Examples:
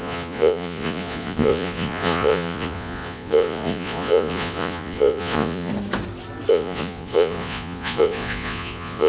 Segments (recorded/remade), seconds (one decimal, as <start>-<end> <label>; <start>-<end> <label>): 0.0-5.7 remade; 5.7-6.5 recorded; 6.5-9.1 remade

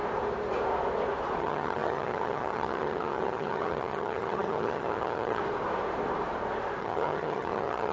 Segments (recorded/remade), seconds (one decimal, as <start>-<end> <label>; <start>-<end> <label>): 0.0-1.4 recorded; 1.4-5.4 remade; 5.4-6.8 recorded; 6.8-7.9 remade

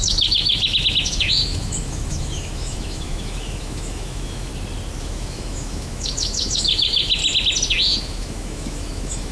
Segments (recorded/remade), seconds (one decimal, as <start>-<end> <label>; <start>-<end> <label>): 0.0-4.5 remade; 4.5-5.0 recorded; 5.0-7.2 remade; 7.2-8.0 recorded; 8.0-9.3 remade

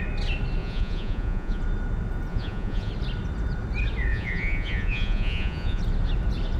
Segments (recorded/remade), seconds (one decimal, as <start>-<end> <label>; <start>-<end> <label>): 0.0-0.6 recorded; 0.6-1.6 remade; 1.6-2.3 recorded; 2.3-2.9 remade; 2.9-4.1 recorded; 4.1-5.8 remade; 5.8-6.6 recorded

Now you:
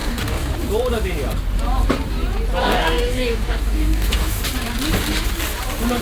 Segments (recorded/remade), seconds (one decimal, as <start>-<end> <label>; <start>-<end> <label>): 0.0-0.5 remade; 0.5-2.6 recorded; 2.6-4.4 remade; 4.4-6.0 recorded

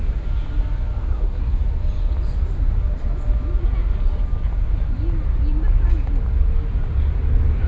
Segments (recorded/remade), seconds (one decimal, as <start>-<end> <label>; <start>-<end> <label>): 0.0-1.0 recorded; 1.0-1.6 remade; 1.6-7.7 recorded

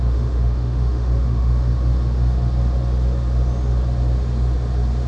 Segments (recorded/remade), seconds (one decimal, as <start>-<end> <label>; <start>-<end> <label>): 0.0-1.7 remade; 1.7-5.1 recorded

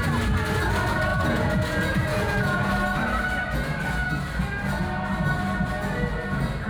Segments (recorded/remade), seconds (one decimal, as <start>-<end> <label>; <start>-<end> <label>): 0.0-1.1 recorded; 1.1-2.7 remade; 2.7-6.7 recorded